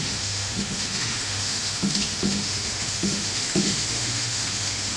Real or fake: fake